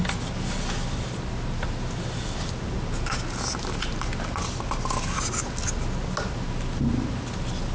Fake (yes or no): no